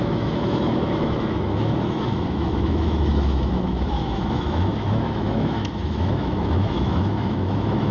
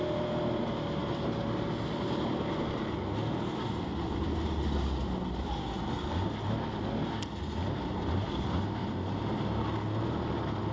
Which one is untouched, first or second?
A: second